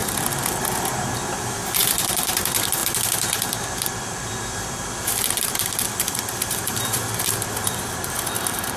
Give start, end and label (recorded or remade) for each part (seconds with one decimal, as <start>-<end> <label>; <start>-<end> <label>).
0.0-1.0 recorded; 1.0-8.8 remade

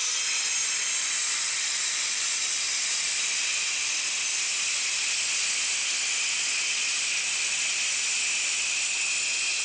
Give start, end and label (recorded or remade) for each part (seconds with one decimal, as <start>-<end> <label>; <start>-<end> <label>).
0.0-9.6 recorded